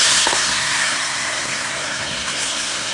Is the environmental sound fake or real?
fake